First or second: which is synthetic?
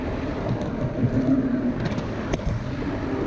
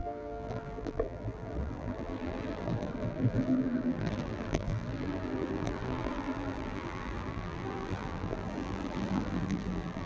second